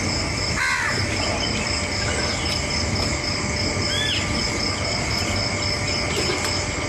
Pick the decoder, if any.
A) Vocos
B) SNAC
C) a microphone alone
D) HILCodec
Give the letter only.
C